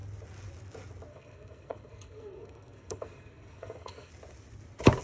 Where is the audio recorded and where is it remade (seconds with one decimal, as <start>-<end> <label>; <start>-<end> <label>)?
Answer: 0.0-1.1 recorded; 1.1-4.1 remade; 4.1-5.0 recorded